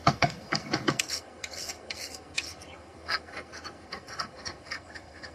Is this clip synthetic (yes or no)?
yes